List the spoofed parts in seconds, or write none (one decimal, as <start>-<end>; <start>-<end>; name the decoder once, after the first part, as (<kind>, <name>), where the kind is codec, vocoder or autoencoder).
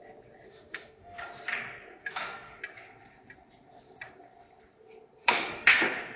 0.5-1.2 (autoencoder, DAC-VAE); 2.0-2.6; 5.2-5.8